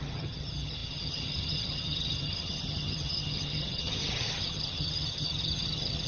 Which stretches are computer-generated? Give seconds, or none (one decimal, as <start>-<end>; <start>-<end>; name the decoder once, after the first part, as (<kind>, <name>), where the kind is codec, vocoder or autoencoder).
0.0-6.1 (vocoder, HiFi-GAN)